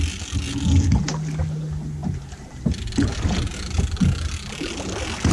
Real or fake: real